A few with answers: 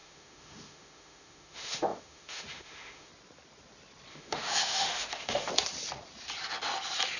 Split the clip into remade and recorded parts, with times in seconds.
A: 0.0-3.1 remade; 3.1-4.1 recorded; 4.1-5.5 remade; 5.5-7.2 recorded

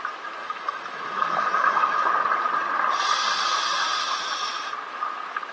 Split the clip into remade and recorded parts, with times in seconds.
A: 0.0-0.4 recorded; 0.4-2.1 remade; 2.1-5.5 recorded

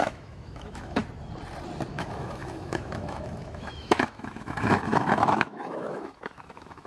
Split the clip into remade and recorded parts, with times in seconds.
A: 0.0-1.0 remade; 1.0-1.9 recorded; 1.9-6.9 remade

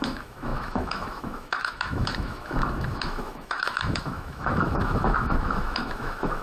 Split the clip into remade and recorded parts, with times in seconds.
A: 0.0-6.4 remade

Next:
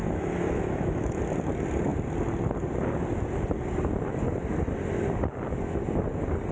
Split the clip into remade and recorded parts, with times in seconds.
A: 0.0-1.2 remade; 1.2-6.5 recorded

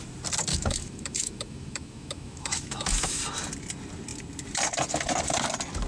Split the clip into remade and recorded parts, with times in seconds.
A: 0.0-0.5 recorded; 0.5-3.2 remade; 3.2-5.9 recorded

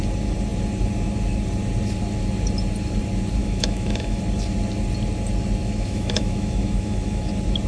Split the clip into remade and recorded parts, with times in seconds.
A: 0.0-3.4 recorded; 3.4-4.2 remade; 4.2-5.6 recorded; 5.6-7.3 remade; 7.3-7.7 recorded

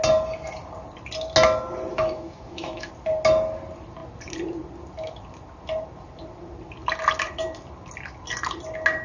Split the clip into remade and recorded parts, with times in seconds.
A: 0.0-1.9 recorded; 1.9-2.9 remade; 2.9-9.0 recorded